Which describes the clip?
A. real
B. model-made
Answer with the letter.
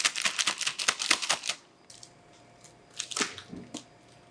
A